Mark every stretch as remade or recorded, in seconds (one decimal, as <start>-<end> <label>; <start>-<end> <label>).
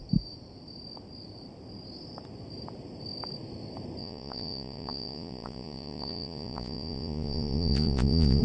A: 0.0-4.0 recorded; 4.0-8.4 remade